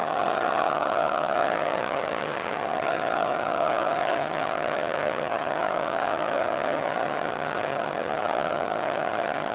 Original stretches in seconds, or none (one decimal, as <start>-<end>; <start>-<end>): none